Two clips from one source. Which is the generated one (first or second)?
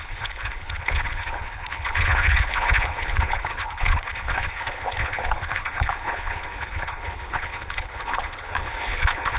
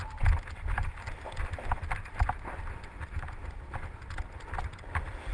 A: first